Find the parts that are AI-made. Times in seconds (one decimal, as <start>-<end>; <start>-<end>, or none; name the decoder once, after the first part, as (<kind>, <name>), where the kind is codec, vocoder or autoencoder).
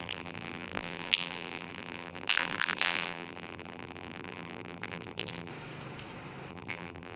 0.0-5.5 (vocoder, BigVGAN v2); 6.5-7.2